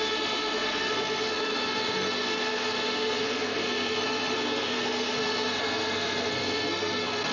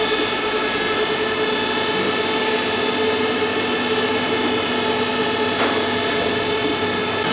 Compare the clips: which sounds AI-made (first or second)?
first